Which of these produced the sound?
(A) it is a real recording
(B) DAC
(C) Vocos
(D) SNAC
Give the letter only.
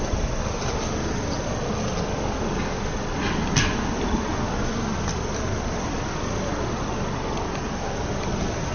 A